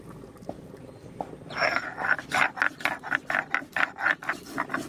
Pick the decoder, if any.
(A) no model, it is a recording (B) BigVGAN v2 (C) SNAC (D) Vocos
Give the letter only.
A